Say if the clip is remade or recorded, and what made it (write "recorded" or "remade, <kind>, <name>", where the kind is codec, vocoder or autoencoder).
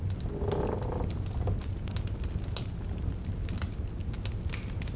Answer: recorded